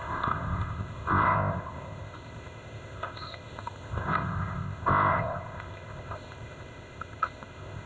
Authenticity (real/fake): fake